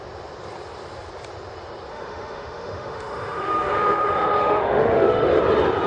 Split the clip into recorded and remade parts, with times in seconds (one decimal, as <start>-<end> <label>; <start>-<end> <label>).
0.0-1.9 recorded; 1.9-5.4 remade; 5.4-5.9 recorded